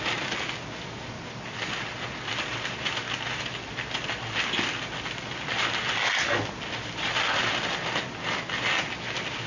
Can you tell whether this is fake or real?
real